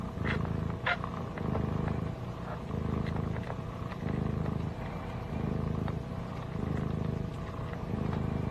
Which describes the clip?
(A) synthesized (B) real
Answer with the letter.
B